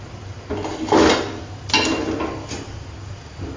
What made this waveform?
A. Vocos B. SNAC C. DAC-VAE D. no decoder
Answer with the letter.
D